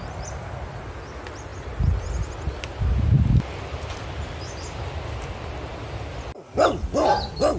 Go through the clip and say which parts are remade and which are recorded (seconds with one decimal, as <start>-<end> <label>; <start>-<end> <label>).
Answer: 0.0-7.6 recorded